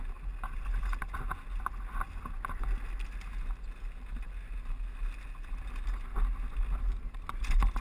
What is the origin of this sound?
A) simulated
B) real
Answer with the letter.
B